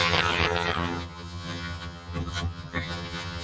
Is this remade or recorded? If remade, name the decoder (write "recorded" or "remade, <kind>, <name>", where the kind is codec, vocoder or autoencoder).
remade, vocoder, HiFi-GAN